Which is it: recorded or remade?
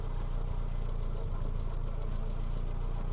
recorded